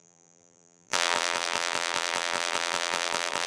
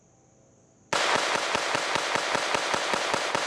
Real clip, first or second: second